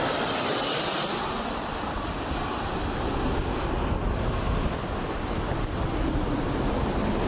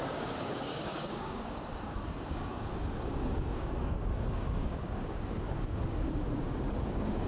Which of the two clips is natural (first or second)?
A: first